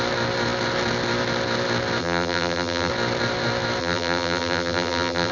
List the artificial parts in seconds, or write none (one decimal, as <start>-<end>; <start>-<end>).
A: 2.0-2.9; 3.8-5.3